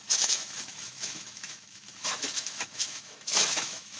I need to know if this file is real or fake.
fake